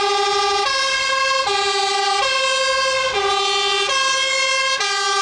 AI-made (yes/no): no